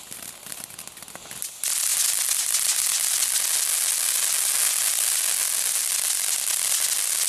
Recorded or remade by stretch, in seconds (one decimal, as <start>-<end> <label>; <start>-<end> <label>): 0.0-7.3 recorded